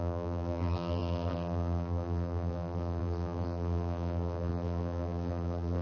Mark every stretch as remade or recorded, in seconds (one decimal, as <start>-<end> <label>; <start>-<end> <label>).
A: 0.0-5.8 remade